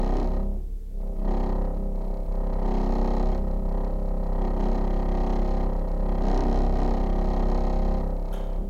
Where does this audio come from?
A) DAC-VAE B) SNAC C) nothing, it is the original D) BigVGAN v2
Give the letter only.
C